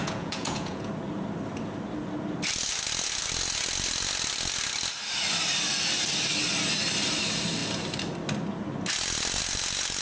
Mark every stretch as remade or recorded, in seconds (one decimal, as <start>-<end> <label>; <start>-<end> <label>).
0.0-0.9 remade; 0.9-10.0 recorded